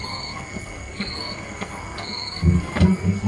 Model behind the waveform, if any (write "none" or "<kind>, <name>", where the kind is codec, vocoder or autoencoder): codec, SNAC